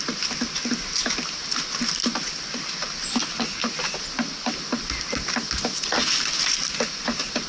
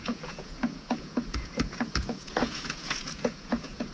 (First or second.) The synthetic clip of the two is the second